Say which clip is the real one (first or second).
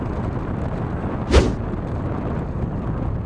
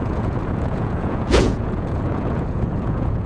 first